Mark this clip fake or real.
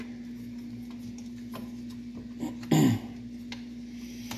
real